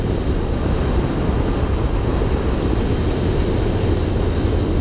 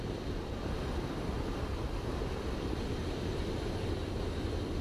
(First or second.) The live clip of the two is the first